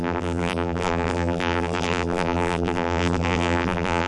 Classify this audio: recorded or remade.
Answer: remade